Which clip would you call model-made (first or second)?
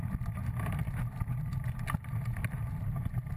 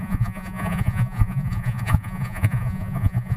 second